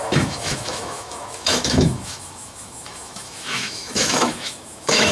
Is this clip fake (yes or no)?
yes